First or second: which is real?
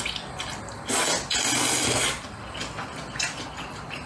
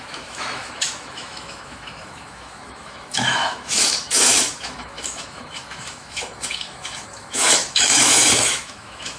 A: first